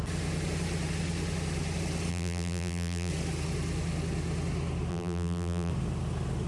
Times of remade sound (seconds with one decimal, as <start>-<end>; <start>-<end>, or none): 2.1-3.1; 4.9-5.7